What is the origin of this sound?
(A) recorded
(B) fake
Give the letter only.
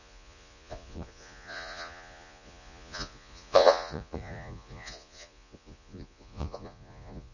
B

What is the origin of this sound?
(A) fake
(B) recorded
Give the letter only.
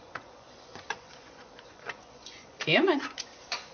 A